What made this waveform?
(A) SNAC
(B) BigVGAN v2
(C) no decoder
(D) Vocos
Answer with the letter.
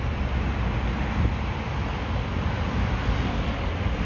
C